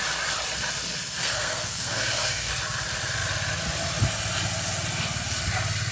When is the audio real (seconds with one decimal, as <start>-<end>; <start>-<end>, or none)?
0.0-1.2; 2.5-5.9